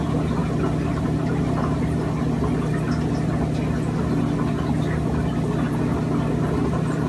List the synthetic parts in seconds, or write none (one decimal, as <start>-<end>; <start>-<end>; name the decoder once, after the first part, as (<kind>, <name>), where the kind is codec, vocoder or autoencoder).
none